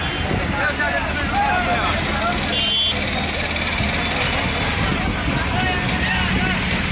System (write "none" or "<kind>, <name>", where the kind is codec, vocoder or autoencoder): none